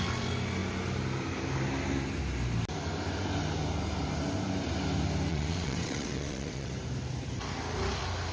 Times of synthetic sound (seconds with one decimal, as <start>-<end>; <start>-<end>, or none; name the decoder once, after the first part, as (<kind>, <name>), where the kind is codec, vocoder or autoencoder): 5.3-6.7 (vocoder, WaveNeXt)